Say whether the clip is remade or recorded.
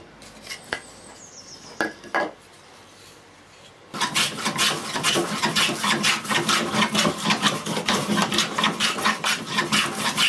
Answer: recorded